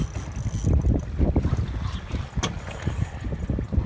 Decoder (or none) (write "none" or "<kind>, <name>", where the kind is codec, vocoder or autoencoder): none